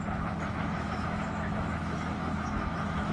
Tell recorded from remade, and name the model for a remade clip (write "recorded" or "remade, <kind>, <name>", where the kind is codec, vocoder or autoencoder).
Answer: remade, autoencoder, DAC-VAE